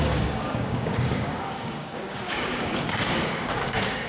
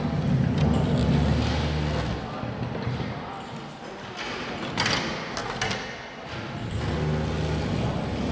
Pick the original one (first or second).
second